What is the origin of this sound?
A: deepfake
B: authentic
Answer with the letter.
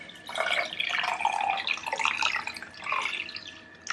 B